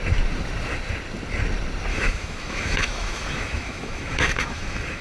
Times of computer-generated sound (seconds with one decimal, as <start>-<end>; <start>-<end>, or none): 1.9-5.0